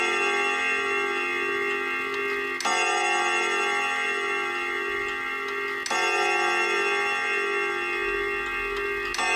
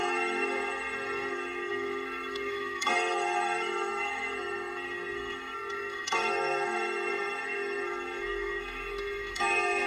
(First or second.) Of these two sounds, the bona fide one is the first